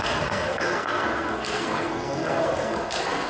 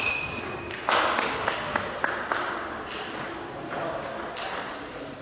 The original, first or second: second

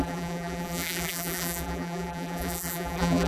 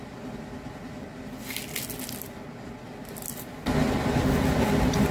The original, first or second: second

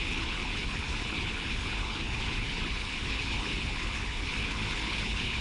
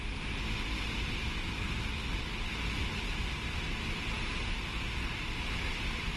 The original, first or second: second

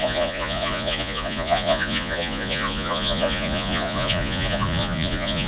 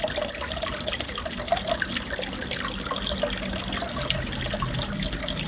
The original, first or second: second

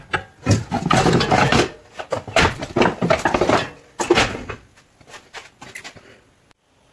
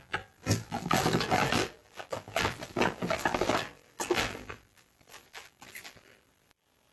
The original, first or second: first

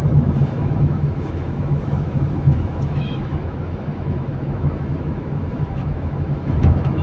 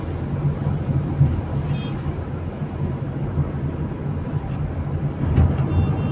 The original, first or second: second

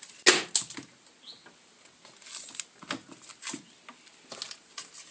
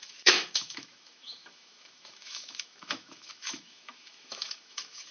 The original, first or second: first